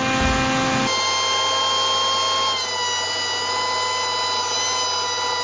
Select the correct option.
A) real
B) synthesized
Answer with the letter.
A